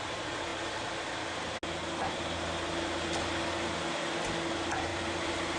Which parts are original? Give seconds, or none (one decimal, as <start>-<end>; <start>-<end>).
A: 0.0-4.9